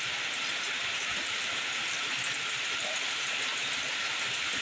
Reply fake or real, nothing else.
real